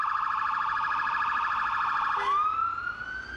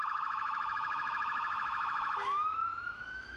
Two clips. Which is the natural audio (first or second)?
first